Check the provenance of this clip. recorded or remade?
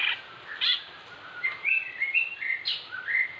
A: remade